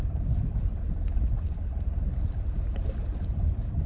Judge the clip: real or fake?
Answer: fake